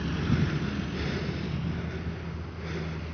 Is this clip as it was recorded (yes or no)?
yes